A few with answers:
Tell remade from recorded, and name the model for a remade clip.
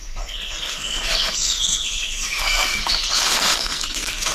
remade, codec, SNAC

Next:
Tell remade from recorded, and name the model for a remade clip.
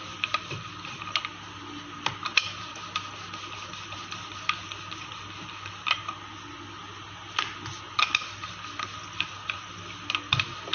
recorded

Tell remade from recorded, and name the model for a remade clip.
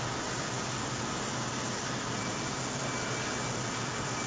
recorded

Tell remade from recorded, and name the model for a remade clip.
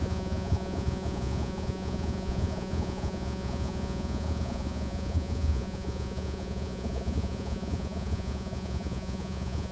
remade, vocoder, Vocos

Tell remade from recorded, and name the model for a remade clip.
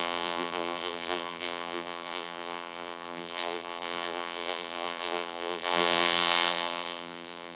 remade, vocoder, BigVGAN v2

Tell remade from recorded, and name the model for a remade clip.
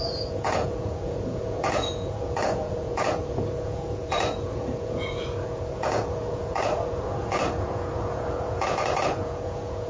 remade, vocoder, Vocos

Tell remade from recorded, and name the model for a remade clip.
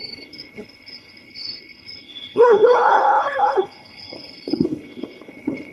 remade, codec, HILCodec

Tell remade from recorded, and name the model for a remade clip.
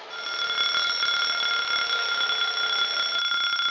recorded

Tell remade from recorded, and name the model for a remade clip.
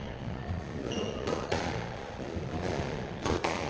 remade, vocoder, Vocos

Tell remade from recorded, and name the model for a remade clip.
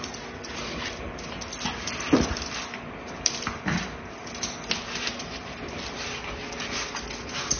recorded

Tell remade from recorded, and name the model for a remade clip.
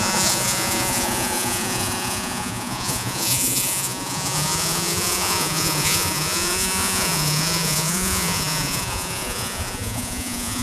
remade, vocoder, Vocos